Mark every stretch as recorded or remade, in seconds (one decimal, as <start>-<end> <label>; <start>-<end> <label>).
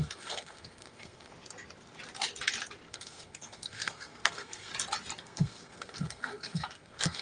0.0-1.3 remade; 1.3-2.9 recorded; 2.9-4.7 remade; 4.7-5.2 recorded; 5.2-7.2 remade